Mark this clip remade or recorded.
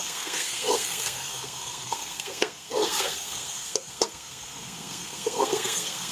remade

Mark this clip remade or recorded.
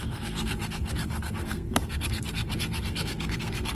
remade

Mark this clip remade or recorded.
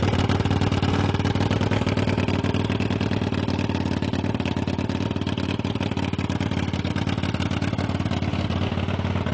recorded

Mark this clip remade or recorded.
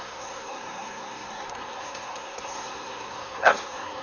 remade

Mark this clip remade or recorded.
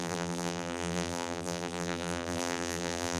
remade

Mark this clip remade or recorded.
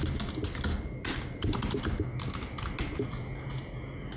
recorded